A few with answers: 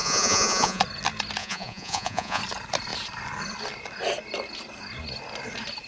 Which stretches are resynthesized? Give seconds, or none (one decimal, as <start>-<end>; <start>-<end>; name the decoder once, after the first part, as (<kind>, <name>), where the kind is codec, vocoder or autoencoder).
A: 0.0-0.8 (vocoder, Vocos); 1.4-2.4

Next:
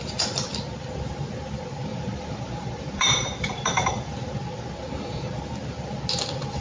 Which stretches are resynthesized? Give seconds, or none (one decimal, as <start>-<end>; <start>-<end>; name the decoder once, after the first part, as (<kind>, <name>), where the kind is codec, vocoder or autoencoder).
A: 1.9-4.3 (vocoder, BigVGAN v2)

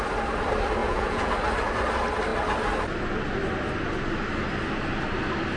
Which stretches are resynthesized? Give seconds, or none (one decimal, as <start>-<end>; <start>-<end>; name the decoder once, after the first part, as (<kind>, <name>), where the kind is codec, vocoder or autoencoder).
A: 0.8-1.3 (vocoder, Vocos)